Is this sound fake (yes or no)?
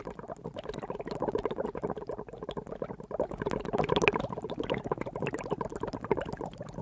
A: no